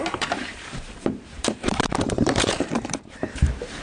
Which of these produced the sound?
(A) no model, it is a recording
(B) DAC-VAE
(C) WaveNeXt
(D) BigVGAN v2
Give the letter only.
D